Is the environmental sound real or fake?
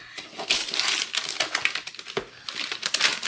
real